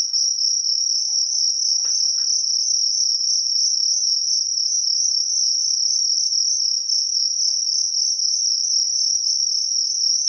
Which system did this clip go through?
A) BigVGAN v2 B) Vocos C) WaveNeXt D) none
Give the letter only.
D